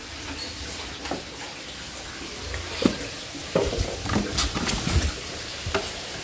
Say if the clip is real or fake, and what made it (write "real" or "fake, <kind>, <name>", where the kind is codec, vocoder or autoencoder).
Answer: real